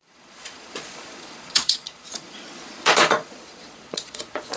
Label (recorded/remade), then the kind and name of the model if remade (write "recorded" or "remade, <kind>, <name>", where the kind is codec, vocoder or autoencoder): remade, vocoder, Vocos